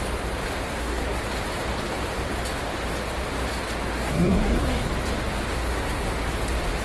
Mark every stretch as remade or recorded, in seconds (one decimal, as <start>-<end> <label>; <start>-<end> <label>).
0.0-0.6 recorded; 0.6-1.2 remade; 1.2-3.9 recorded; 3.9-4.9 remade; 4.9-5.5 recorded; 5.5-6.2 remade; 6.2-6.8 recorded